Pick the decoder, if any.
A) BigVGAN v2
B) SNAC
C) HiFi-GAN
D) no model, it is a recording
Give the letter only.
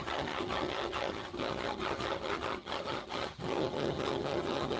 C